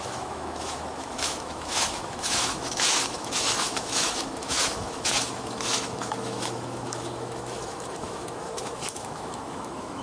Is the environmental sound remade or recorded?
remade